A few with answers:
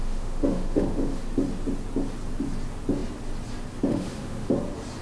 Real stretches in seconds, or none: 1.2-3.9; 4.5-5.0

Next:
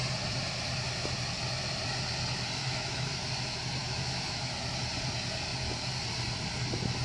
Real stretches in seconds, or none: 0.0-2.6; 3.1-3.8; 4.5-7.0

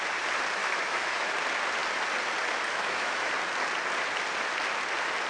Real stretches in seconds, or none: 0.0-0.6; 1.3-2.7; 3.3-5.3

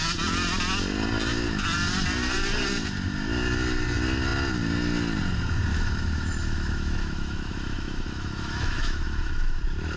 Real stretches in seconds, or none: 0.0-5.7; 9.6-10.0

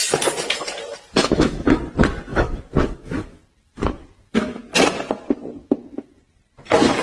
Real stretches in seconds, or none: 0.0-1.2; 1.8-2.3; 4.6-5.6; 6.2-7.0

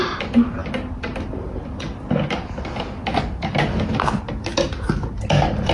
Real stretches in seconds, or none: 0.0-5.7